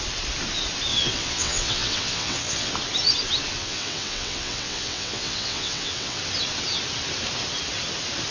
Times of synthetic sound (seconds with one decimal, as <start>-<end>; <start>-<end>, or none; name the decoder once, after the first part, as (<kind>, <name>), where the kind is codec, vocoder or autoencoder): 0.9-2.7 (vocoder, WaveNeXt); 3.6-6.2